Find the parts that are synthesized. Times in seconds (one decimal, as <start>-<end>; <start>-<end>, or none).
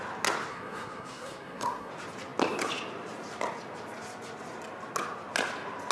0.5-1.9